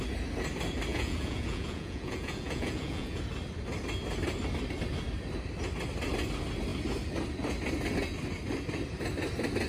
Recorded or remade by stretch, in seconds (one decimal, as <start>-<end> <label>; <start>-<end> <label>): 0.0-0.9 recorded; 0.9-3.2 remade; 3.2-9.7 recorded